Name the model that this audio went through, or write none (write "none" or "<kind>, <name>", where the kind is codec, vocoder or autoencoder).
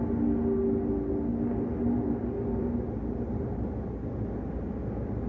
none